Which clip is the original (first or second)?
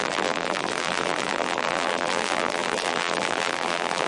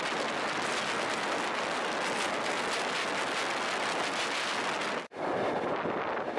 second